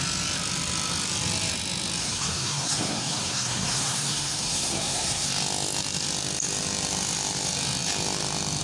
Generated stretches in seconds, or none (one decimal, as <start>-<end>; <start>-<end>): 2.0-5.3